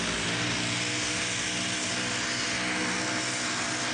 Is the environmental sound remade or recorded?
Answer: recorded